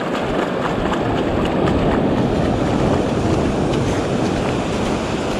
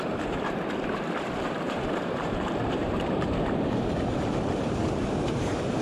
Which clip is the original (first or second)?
first